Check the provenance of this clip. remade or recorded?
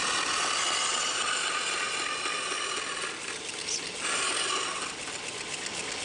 recorded